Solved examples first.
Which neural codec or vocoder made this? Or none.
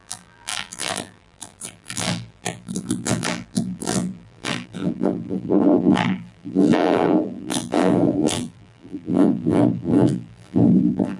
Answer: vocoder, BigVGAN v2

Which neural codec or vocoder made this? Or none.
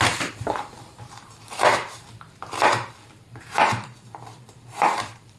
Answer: vocoder, BigVGAN v2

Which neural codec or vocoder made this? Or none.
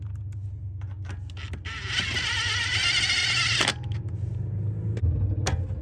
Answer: none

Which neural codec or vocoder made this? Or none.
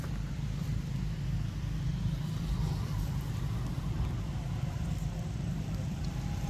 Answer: vocoder, BigVGAN v2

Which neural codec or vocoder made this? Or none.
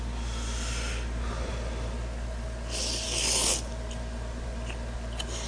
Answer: vocoder, BigVGAN v2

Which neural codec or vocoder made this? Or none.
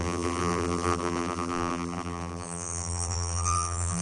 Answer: vocoder, BigVGAN v2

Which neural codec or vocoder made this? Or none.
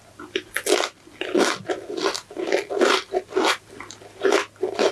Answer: none